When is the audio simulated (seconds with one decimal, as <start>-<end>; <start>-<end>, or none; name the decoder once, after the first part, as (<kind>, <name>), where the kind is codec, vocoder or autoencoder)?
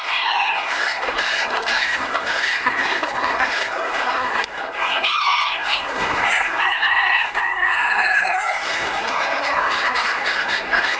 0.0-11.0 (codec, SNAC)